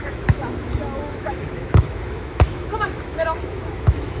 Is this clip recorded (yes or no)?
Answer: no